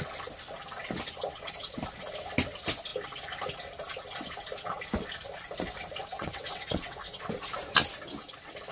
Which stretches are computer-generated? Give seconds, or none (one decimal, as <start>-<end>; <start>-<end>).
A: 6.0-7.0